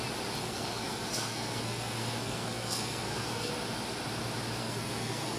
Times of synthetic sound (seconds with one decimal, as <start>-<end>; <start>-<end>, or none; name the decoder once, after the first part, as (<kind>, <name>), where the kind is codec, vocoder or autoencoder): 0.4-3.5 (codec, SNAC); 4.6-5.4